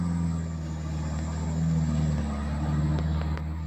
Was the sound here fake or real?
real